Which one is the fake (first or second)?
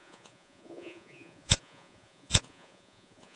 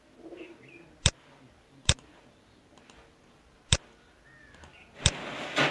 first